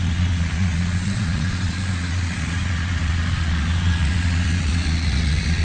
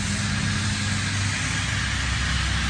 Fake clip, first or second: first